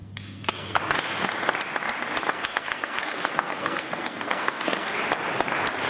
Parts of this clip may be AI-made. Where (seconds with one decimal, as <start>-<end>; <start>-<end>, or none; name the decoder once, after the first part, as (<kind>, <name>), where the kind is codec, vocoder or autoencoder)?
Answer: 0.0-0.8 (codec, SNAC); 2.3-5.0